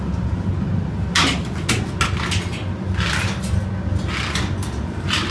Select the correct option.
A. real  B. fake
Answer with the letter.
A